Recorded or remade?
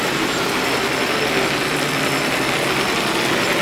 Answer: recorded